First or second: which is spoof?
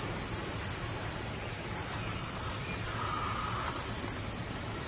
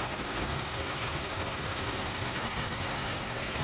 second